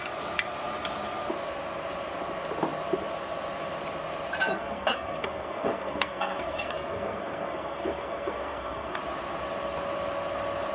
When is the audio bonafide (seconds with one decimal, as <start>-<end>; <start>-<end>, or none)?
0.0-4.5; 9.0-10.7